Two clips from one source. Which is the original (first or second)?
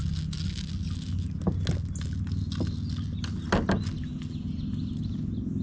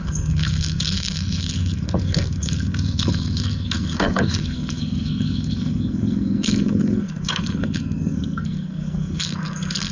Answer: first